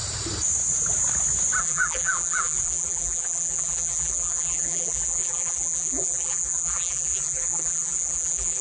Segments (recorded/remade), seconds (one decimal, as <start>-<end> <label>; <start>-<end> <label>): 0.0-1.6 recorded; 1.6-8.6 remade